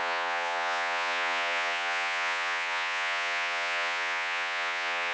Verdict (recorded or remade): remade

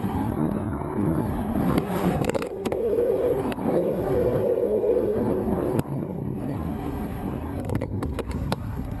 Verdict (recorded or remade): remade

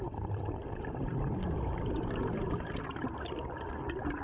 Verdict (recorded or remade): recorded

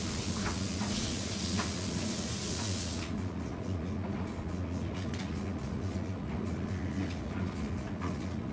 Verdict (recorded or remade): remade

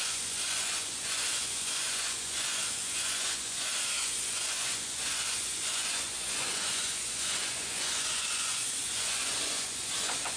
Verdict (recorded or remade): remade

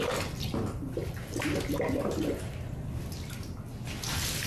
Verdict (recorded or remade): recorded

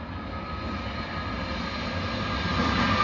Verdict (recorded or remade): recorded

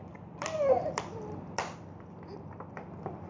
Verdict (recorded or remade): remade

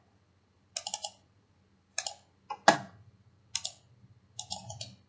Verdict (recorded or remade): recorded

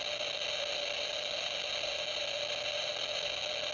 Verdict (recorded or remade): recorded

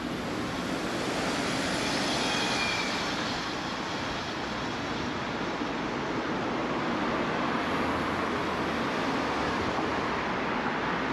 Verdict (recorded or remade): recorded